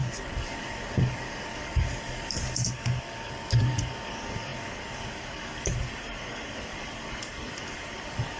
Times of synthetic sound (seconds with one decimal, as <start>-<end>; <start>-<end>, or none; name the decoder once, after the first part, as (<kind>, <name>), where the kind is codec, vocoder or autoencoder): 0.0-8.4 (codec, DAC)